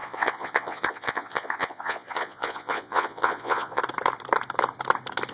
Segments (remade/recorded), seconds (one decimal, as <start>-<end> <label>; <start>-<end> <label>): 0.0-3.8 remade; 3.8-5.3 recorded